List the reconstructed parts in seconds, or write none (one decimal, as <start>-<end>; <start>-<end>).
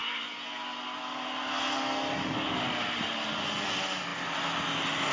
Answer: none